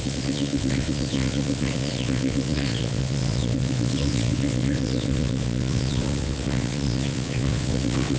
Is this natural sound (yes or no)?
no